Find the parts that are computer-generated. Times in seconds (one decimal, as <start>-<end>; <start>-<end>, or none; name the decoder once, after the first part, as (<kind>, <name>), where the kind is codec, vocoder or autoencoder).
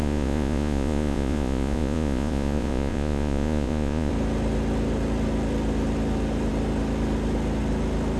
0.0-4.1 (vocoder, Vocos)